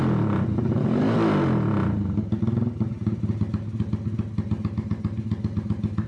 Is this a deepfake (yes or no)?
no